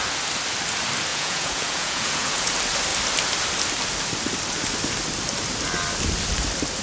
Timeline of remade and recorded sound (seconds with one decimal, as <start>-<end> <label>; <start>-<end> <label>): 0.0-1.1 recorded; 1.1-2.5 remade; 2.5-6.8 recorded